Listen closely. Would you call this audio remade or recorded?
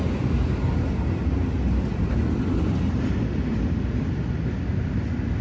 recorded